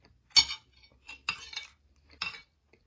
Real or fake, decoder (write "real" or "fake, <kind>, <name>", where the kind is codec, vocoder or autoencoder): real